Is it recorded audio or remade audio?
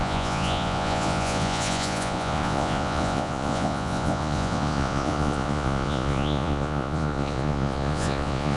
remade